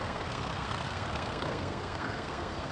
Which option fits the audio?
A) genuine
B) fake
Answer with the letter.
B